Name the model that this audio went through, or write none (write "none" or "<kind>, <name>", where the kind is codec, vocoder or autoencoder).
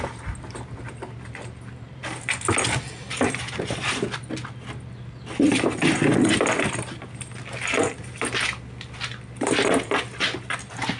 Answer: vocoder, BigVGAN v2